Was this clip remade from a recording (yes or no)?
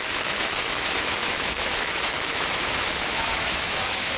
yes